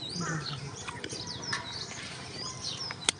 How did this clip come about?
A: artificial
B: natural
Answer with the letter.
A